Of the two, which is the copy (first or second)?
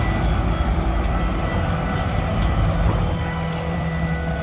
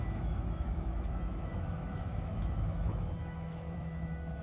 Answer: second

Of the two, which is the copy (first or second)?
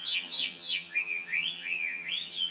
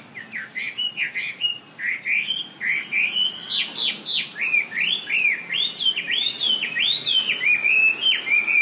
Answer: first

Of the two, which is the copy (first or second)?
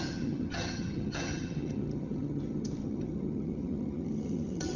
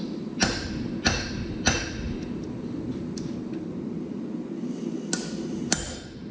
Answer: first